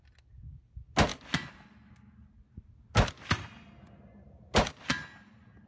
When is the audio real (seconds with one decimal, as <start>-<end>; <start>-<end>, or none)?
0.0-5.7